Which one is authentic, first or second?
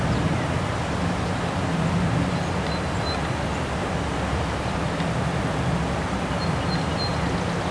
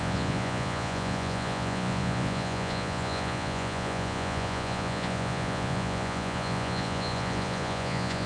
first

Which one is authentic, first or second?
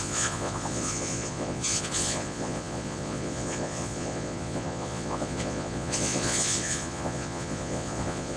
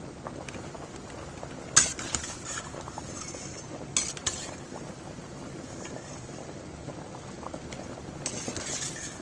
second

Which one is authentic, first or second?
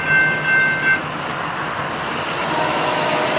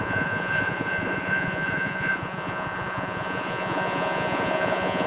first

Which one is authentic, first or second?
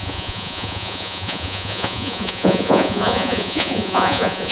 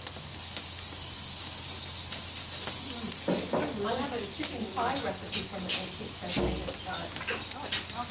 second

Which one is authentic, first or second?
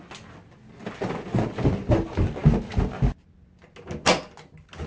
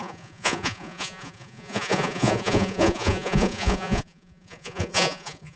first